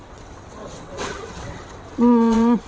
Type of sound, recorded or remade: remade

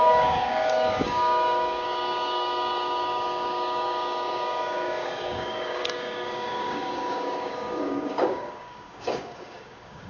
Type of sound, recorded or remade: remade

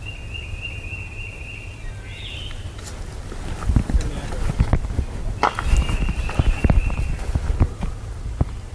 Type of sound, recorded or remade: recorded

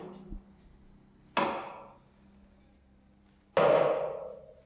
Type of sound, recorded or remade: recorded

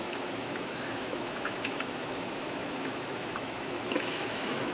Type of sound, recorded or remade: remade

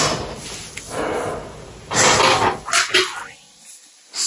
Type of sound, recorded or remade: recorded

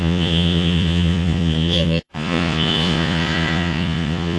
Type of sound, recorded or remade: remade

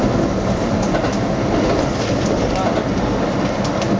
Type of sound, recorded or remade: recorded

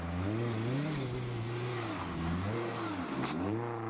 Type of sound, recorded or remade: recorded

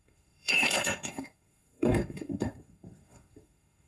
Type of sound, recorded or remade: remade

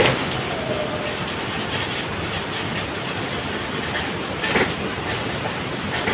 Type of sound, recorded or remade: recorded